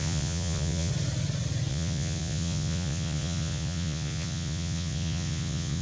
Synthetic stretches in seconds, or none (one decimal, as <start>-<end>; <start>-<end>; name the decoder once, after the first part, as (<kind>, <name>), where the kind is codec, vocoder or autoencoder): 0.0-0.9 (vocoder, Vocos); 1.7-5.8